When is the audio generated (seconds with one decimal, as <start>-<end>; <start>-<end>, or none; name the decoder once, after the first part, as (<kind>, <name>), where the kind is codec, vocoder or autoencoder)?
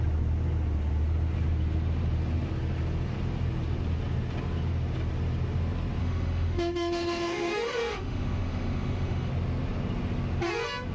6.0-9.3 (autoencoder, DAC-VAE)